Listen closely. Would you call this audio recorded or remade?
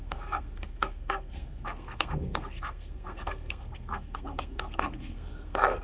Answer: remade